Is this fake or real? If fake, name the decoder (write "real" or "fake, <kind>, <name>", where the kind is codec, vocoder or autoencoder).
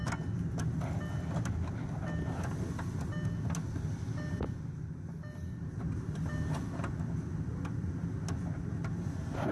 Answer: real